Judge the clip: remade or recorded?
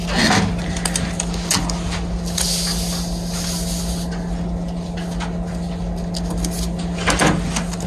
recorded